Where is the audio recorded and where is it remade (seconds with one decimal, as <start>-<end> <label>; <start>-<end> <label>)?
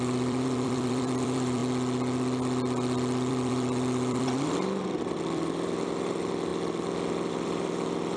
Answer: 0.0-1.6 remade; 1.6-3.3 recorded; 3.3-6.5 remade; 6.5-7.3 recorded; 7.3-8.2 remade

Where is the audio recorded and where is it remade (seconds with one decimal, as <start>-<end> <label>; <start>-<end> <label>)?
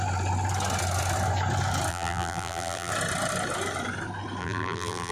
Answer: 0.0-1.9 recorded; 1.9-2.9 remade; 2.9-4.4 recorded; 4.4-5.1 remade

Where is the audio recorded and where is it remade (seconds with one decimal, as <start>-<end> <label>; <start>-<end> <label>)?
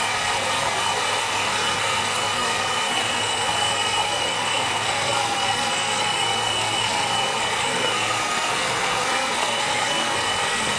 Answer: 0.0-10.8 remade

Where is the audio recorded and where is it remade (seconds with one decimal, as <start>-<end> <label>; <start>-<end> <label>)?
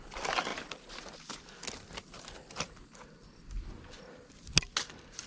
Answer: 0.0-5.3 recorded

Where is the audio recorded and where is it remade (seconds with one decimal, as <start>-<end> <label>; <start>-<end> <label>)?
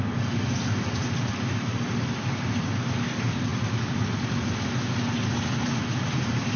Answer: 0.0-6.6 recorded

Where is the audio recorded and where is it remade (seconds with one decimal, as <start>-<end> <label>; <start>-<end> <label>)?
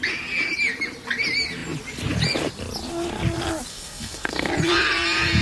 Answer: 0.0-3.7 recorded; 3.7-4.5 remade; 4.5-5.4 recorded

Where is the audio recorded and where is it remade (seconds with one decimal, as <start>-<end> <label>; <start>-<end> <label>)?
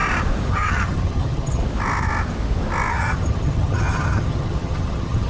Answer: 0.0-0.5 recorded; 0.5-1.6 remade; 1.6-2.9 recorded; 2.9-5.3 remade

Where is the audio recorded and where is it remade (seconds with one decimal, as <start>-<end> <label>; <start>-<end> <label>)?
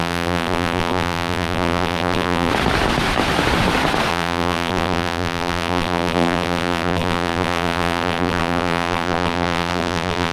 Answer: 0.0-2.5 remade; 2.5-4.1 recorded; 4.1-10.3 remade